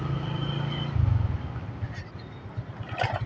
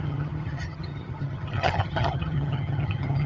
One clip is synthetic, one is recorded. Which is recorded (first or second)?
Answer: first